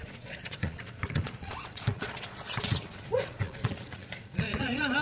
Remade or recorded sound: remade